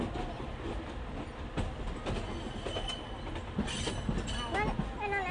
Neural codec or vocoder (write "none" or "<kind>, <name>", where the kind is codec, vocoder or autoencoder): none